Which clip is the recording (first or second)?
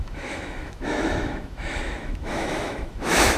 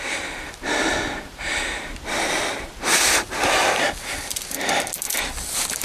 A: second